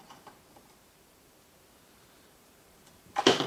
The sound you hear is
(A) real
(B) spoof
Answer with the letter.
B